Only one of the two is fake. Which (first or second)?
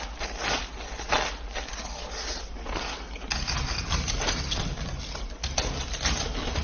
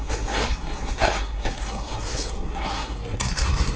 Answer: second